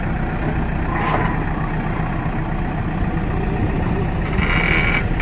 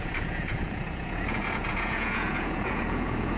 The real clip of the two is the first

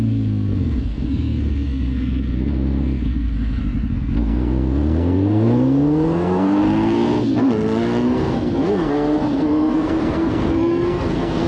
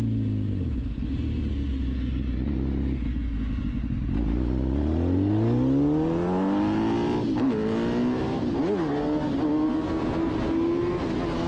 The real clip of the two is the second